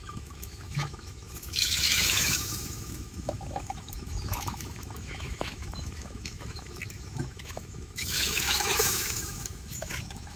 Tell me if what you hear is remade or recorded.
remade